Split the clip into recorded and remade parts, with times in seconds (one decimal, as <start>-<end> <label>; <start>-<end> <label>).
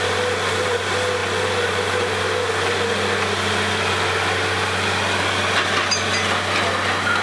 0.0-7.2 recorded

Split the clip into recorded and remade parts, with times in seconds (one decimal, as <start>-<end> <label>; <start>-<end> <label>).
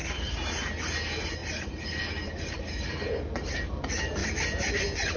0.0-0.5 remade; 0.5-1.4 recorded; 1.4-2.1 remade; 2.1-5.2 recorded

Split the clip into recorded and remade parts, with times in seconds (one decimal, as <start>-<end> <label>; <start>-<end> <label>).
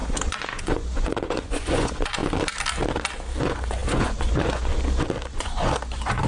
0.0-2.2 remade; 2.2-3.4 recorded; 3.4-4.7 remade; 4.7-5.4 recorded; 5.4-6.3 remade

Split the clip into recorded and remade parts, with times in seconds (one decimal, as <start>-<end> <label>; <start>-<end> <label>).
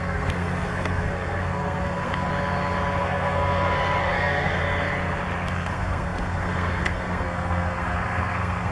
0.0-2.3 remade; 2.3-3.0 recorded; 3.0-4.6 remade; 4.6-5.5 recorded; 5.5-8.7 remade